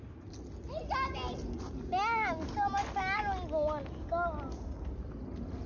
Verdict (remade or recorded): recorded